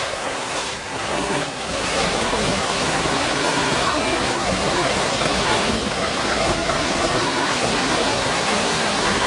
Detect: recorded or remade remade